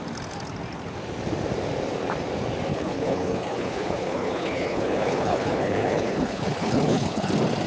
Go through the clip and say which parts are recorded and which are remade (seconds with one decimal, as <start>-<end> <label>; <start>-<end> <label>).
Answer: 0.0-2.7 recorded; 2.7-7.3 remade; 7.3-7.7 recorded